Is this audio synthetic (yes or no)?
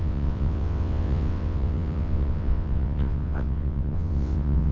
yes